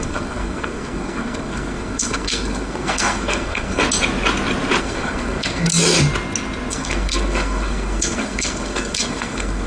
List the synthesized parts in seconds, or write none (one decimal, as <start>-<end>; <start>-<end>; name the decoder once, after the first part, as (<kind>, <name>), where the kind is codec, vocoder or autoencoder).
0.0-3.8 (codec, SNAC); 4.8-5.7; 6.7-9.7